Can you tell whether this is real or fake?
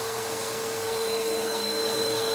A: fake